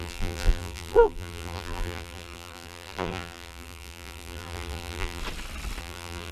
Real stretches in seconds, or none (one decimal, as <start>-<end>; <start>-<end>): 5.2-5.8